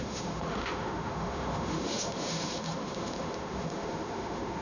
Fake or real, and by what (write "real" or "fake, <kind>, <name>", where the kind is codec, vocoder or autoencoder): fake, autoencoder, DAC-VAE